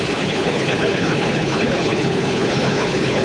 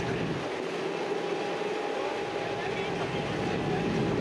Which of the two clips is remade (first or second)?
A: first